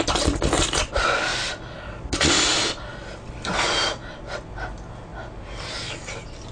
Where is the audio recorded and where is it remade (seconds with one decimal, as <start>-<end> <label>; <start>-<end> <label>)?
0.0-6.5 recorded